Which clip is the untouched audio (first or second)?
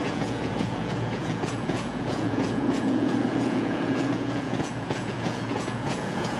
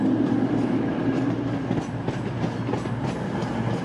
second